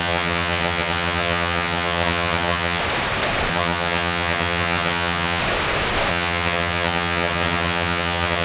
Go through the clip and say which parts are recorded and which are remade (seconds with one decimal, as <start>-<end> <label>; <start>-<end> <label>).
0.0-2.8 remade; 2.8-3.5 recorded; 3.5-5.4 remade; 5.4-6.1 recorded; 6.1-8.4 remade